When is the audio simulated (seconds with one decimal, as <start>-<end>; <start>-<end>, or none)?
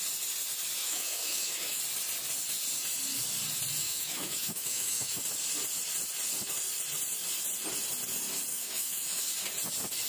0.8-1.8; 3.8-5.2; 8.5-9.3